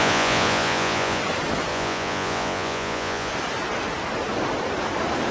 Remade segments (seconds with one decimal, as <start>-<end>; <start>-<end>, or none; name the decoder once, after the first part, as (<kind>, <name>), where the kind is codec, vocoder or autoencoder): 0.0-1.2 (vocoder, Vocos); 1.7-3.3